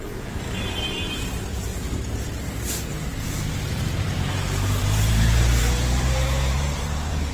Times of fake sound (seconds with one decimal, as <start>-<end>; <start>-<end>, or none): 0.0-1.7; 2.6-7.3